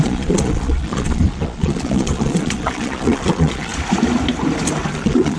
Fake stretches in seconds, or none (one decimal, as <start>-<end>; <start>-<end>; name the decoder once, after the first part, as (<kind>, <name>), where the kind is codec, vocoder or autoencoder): 0.0-3.7 (vocoder, Vocos); 4.9-5.4